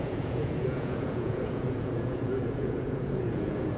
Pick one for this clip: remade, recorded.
remade